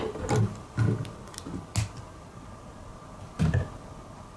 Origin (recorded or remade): recorded